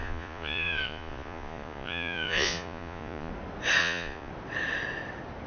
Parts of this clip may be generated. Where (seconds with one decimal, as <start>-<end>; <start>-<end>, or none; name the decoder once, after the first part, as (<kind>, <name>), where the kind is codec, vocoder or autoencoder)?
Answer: 0.0-3.3 (vocoder, Vocos); 3.8-4.3